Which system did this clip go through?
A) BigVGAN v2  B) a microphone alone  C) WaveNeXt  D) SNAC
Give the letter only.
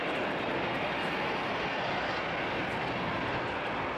B